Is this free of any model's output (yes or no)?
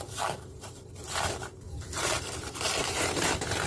no